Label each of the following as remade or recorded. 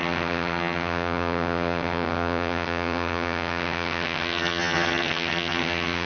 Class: remade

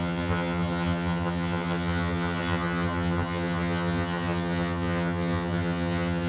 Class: remade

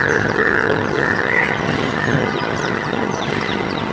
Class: remade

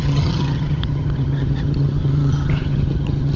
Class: remade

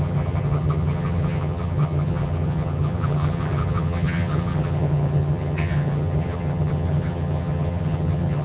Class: remade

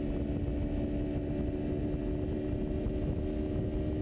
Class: recorded